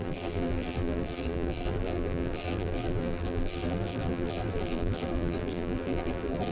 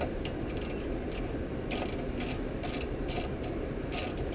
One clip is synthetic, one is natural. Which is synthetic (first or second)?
first